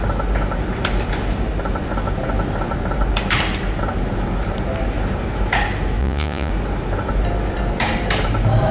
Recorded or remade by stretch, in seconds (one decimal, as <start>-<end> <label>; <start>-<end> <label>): 0.0-6.0 recorded; 6.0-6.5 remade; 6.5-8.7 recorded